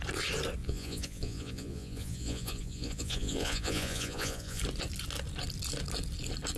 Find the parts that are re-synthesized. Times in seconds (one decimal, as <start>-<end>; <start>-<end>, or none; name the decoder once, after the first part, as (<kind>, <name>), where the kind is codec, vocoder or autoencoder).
0.6-4.6 (vocoder, Vocos)

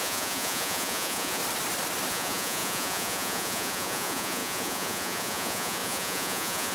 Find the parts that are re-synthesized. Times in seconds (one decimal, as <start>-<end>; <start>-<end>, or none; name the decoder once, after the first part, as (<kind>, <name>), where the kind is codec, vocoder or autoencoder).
0.0-1.4 (vocoder, Vocos); 2.1-6.7

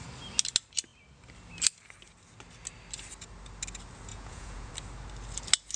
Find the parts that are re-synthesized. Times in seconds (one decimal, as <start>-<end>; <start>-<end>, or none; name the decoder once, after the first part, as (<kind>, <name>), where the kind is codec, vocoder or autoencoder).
4.1-4.7 (vocoder, Vocos)

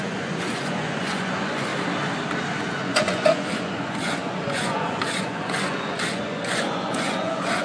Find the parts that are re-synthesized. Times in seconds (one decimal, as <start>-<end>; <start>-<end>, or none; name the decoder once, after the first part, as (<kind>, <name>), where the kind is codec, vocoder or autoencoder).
0.0-1.7 (vocoder, Vocos); 2.6-7.6

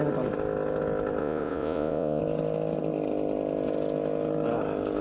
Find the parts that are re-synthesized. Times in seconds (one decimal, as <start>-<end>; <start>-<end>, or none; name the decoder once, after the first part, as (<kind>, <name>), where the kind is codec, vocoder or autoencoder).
1.2-2.2 (vocoder, Vocos)

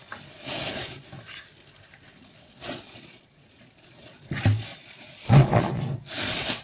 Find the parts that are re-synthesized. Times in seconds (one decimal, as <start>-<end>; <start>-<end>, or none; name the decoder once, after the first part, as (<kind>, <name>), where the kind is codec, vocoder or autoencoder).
2.4-4.2 (vocoder, Vocos); 4.7-5.8

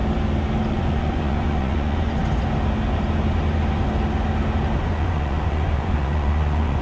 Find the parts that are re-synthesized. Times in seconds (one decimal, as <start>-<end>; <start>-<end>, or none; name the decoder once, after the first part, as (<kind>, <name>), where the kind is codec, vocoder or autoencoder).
0.7-2.2 (vocoder, Vocos); 4.8-6.8